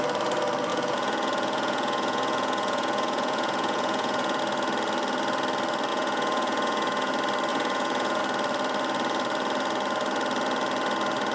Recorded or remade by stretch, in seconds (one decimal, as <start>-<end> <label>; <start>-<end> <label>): 0.0-0.7 recorded; 0.7-4.4 remade; 4.4-5.9 recorded; 5.9-7.1 remade; 7.1-7.5 recorded; 7.5-8.2 remade; 8.2-11.3 recorded